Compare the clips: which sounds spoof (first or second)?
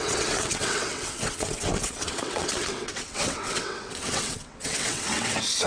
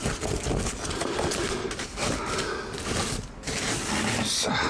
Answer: first